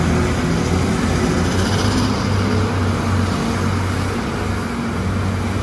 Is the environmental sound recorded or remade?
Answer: recorded